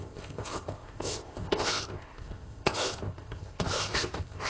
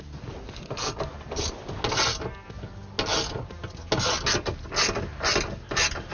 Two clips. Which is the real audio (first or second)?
second